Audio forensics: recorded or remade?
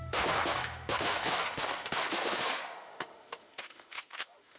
remade